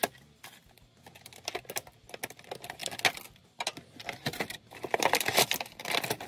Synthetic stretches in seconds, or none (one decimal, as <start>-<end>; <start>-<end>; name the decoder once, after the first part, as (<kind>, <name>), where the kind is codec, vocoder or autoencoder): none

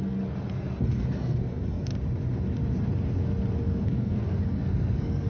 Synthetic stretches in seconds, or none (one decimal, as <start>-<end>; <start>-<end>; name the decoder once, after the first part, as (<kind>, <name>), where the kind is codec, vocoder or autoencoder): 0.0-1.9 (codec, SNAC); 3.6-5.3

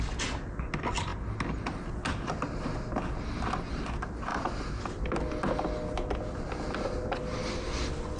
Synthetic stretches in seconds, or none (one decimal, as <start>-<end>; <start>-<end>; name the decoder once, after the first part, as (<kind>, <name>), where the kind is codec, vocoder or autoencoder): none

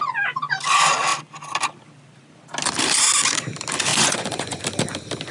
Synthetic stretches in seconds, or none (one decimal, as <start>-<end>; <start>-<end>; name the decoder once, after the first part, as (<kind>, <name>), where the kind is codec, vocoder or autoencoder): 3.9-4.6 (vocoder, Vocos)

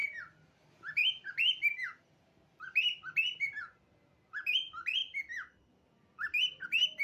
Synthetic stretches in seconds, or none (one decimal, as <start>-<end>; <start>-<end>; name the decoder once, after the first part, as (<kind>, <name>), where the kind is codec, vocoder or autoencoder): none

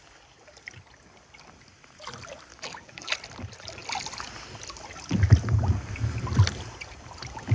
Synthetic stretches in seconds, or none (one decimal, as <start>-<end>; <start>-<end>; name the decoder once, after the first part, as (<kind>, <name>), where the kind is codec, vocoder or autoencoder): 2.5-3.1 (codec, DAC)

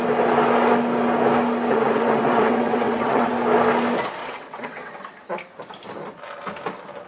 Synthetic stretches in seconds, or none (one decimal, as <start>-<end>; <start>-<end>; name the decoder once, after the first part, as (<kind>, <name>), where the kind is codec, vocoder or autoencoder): 1.7-3.3 (vocoder, WaveNeXt); 4.2-4.9

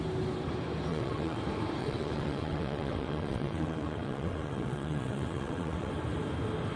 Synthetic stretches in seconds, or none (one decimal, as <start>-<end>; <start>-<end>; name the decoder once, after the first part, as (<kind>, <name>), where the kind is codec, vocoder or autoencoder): 0.9-1.4 (vocoder, WaveNeXt); 1.8-5.9